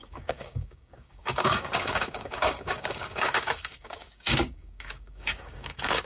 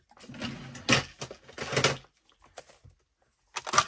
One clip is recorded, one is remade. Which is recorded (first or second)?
second